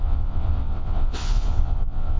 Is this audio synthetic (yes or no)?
yes